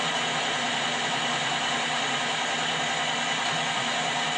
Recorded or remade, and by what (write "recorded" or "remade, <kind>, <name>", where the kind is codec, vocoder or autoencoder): recorded